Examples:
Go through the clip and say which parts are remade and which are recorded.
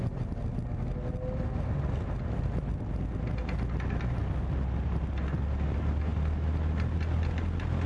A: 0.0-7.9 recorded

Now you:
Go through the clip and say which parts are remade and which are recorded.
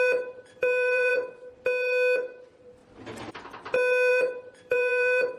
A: 0.0-1.1 remade; 1.1-2.4 recorded; 2.4-2.8 remade; 2.8-4.1 recorded; 4.1-5.4 remade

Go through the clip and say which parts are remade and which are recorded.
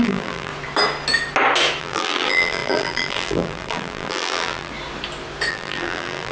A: 0.0-0.5 remade; 0.5-1.8 recorded; 1.8-4.7 remade; 4.7-5.5 recorded; 5.5-6.3 remade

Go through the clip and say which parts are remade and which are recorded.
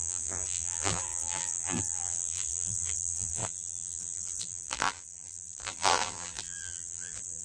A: 0.0-7.4 remade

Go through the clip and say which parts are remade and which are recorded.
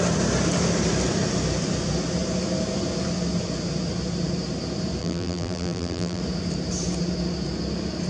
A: 0.0-5.0 recorded; 5.0-6.2 remade; 6.2-8.1 recorded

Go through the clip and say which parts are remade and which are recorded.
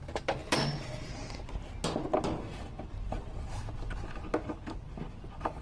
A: 0.0-5.6 recorded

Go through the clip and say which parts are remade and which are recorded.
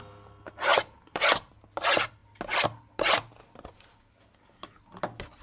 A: 0.0-0.7 recorded; 0.7-1.5 remade; 1.5-5.4 recorded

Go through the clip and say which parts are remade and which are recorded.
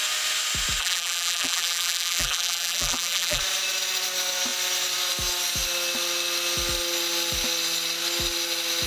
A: 0.0-0.8 recorded; 0.8-3.4 remade; 3.4-8.9 recorded